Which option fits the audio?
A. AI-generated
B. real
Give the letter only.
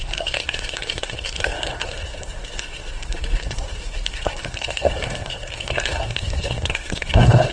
A